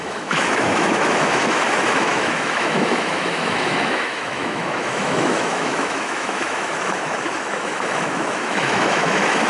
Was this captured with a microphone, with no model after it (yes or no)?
no